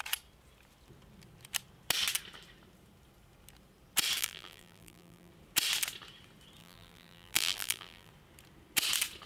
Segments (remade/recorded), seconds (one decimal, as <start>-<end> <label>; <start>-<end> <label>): 0.0-4.2 recorded; 4.2-5.3 remade; 5.3-6.6 recorded; 6.6-8.1 remade; 8.1-9.3 recorded